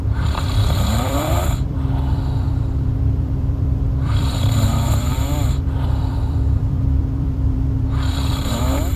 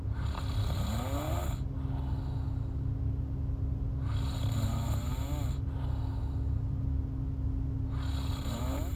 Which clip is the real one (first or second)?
second